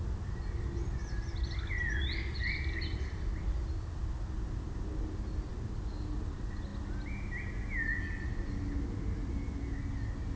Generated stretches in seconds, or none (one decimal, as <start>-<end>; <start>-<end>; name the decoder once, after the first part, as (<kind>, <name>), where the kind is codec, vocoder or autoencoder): 1.0-3.7 (vocoder, BigVGAN v2)